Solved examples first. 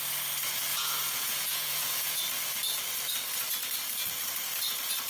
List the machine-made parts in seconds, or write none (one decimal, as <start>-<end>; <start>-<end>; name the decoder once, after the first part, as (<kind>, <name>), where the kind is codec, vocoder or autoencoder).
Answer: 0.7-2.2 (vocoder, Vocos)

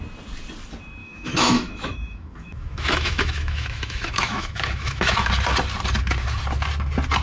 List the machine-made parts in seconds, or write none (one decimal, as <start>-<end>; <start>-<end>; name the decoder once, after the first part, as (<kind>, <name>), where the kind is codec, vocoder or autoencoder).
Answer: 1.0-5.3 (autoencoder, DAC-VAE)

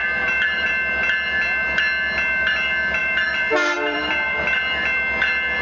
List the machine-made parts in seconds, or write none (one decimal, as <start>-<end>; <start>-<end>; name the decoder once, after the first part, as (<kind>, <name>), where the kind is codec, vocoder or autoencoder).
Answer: 0.0-0.7 (vocoder, BigVGAN v2); 3.0-4.4

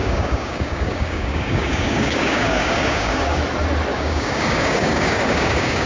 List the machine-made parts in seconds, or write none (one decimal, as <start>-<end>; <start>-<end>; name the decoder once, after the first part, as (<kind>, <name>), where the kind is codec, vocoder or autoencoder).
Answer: 0.0-3.4 (codec, DAC); 3.9-5.9

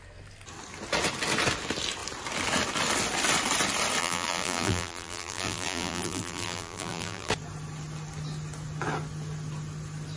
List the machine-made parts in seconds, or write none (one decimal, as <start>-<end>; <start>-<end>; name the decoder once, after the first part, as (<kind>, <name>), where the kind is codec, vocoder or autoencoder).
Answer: 4.0-7.3 (vocoder, BigVGAN v2)